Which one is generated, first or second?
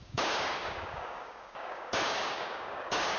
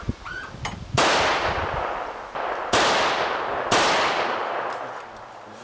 first